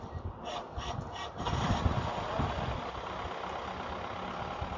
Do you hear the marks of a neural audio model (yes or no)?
no